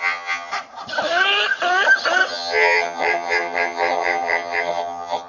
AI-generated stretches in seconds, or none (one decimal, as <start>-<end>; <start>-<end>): 0.0-0.5; 2.3-5.3